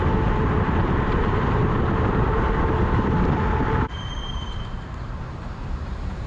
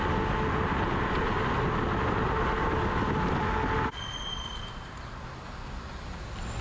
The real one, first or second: second